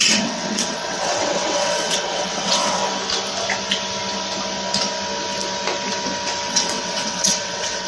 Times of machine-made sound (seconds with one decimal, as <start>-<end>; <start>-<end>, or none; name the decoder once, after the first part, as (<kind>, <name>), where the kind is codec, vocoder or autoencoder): 0.0-2.8 (vocoder, WaveNeXt); 6.5-7.9